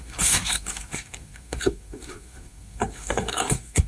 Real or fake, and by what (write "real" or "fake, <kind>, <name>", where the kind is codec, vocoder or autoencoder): fake, codec, SNAC